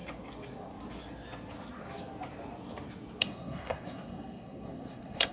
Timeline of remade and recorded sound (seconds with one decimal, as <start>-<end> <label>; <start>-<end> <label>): 0.0-3.2 recorded; 3.2-5.3 remade